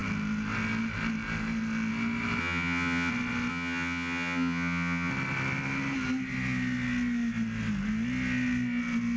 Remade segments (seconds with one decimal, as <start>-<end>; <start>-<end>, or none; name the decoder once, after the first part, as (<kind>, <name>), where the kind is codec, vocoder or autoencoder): 2.4-3.1 (vocoder, HiFi-GAN); 3.5-5.1